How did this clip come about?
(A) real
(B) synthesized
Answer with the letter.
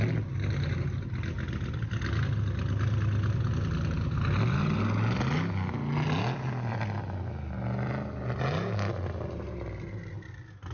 A